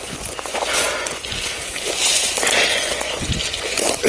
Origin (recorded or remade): remade